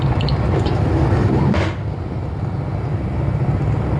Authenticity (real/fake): real